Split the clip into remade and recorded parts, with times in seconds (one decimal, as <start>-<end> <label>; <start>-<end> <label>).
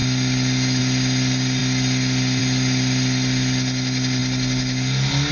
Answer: 0.0-5.3 recorded